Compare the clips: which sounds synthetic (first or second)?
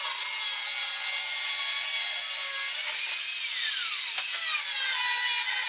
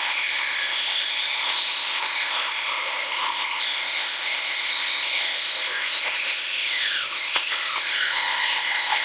second